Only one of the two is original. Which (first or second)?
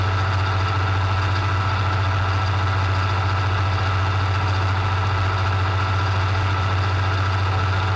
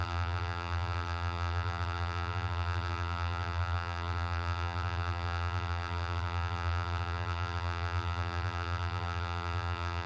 first